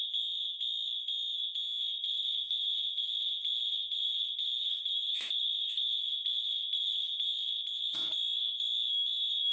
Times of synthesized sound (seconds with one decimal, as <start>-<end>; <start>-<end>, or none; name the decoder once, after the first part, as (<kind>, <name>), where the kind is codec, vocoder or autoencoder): 0.0-1.6 (autoencoder, DAC-VAE); 4.9-5.8; 7.8-9.5